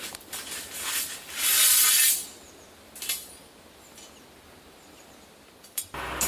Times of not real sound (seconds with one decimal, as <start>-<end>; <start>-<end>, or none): none